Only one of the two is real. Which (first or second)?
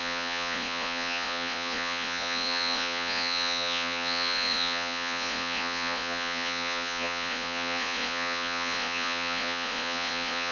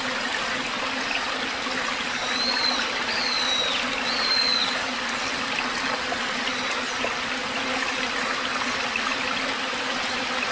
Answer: second